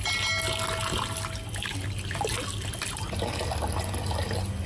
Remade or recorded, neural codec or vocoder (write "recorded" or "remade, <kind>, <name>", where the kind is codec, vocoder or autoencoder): recorded